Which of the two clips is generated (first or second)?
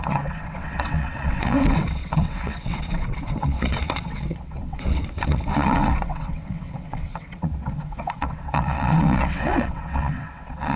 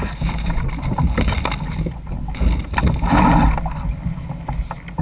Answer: first